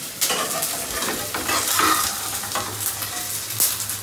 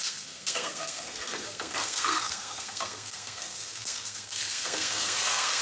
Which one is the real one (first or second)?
first